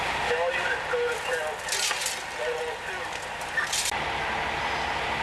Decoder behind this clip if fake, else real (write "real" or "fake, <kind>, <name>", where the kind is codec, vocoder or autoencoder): real